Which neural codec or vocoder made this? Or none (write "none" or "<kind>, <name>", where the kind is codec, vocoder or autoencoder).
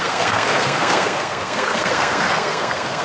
codec, SNAC